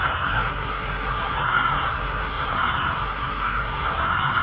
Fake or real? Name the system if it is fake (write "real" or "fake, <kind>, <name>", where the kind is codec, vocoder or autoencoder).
fake, codec, SNAC